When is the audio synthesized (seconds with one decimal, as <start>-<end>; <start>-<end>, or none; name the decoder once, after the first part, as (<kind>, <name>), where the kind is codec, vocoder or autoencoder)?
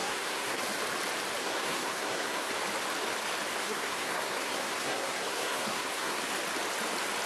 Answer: 0.0-0.6 (codec, SNAC); 1.4-2.5; 3.6-6.2